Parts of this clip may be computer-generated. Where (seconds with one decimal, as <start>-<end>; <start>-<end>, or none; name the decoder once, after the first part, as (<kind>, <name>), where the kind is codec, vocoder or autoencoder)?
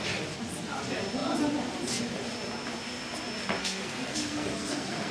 3.6-5.1 (codec, SNAC)